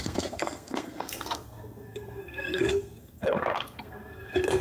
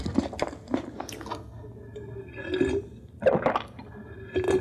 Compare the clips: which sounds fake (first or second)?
first